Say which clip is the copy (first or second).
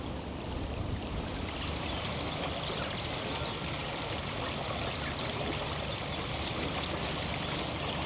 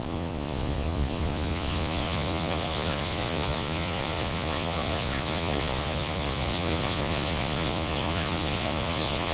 second